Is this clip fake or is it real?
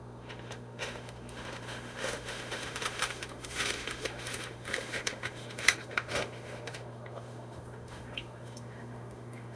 fake